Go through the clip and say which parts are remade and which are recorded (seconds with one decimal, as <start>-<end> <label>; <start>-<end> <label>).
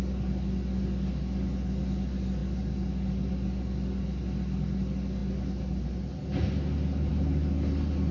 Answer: 0.0-8.1 recorded